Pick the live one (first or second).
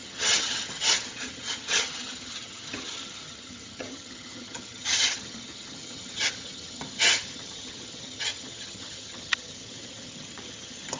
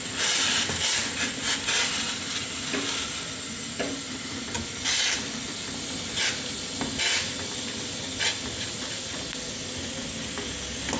second